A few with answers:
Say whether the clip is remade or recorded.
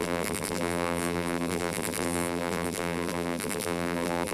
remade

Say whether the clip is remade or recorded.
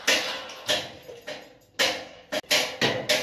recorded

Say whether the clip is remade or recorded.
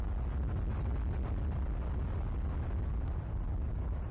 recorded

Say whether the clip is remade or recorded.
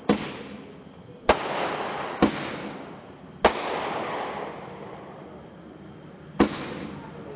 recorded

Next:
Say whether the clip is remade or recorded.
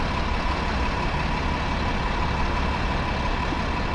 recorded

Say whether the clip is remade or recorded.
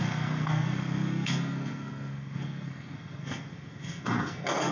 remade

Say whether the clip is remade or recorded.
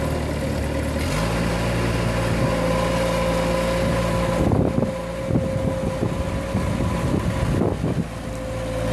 recorded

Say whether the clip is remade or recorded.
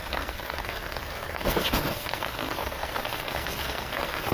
remade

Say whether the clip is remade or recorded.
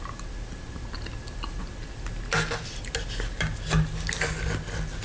recorded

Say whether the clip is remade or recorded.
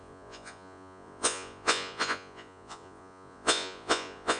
remade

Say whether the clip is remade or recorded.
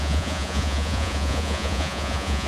remade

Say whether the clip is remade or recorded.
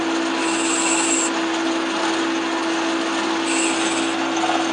recorded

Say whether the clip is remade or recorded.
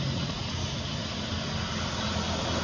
recorded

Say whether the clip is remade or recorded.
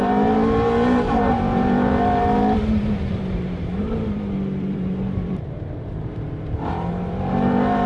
remade